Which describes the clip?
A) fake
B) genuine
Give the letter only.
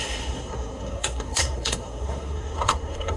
A